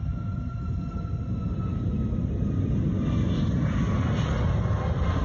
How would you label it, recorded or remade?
recorded